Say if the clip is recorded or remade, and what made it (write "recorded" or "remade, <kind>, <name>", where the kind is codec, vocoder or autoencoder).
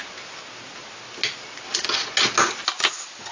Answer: recorded